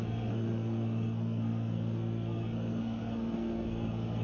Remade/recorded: remade